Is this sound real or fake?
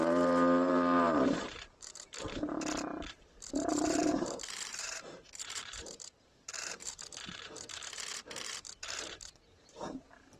fake